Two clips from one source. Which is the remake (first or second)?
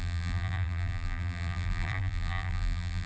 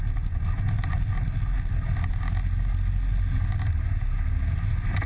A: first